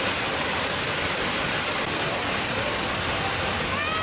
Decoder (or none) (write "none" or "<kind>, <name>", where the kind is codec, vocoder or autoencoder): none